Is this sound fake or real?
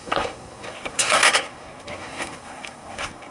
fake